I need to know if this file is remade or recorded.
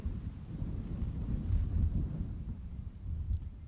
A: remade